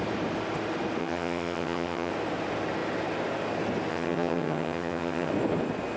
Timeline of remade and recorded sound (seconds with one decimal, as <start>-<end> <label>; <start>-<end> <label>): 0.0-1.0 recorded; 1.0-2.1 remade; 2.1-3.9 recorded; 3.9-5.3 remade; 5.3-6.0 recorded